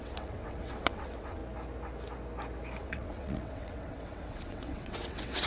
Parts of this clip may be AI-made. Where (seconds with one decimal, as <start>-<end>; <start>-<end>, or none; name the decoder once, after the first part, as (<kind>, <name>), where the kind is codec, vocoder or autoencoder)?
0.0-1.4 (vocoder, WaveNeXt); 2.8-5.5